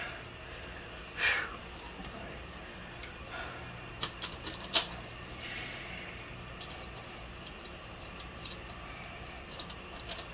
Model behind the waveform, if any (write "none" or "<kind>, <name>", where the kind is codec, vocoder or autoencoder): vocoder, BigVGAN v2